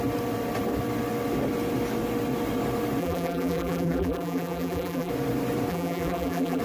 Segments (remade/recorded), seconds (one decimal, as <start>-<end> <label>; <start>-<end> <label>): 0.0-3.0 recorded; 3.0-5.1 remade; 5.1-5.7 recorded; 5.7-6.6 remade